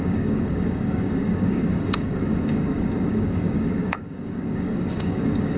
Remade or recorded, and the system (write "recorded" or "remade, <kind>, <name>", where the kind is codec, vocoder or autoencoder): remade, codec, DAC